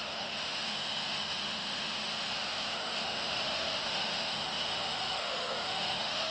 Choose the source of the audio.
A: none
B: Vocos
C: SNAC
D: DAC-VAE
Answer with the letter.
D